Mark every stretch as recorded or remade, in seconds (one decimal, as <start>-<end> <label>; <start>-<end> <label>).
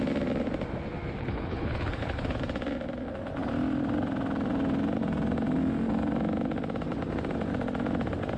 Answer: 0.0-1.2 recorded; 1.2-2.4 remade; 2.4-8.4 recorded